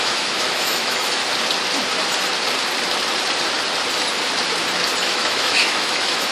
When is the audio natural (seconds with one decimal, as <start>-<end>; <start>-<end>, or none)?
1.2-5.0